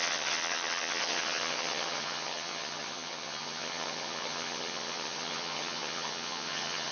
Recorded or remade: remade